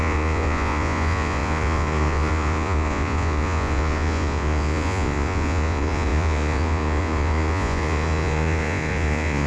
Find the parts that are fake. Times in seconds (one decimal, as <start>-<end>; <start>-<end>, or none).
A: 0.0-9.5